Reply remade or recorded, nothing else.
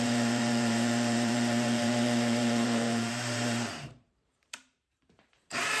remade